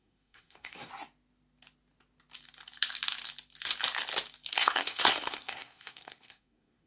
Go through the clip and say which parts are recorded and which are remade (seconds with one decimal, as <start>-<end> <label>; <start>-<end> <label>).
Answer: 0.0-0.9 remade; 0.9-4.5 recorded; 4.5-6.9 remade